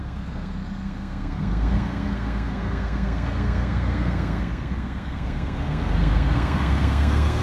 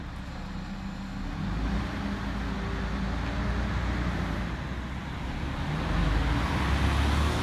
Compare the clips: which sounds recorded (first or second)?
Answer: second